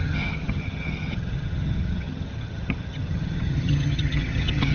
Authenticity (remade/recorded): remade